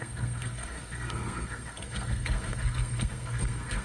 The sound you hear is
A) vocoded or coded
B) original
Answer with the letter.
A